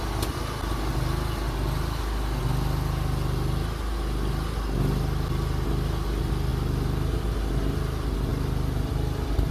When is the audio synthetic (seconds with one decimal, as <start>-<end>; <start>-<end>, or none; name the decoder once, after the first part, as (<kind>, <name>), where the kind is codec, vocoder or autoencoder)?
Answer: none